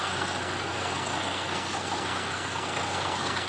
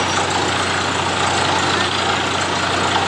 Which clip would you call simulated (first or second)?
first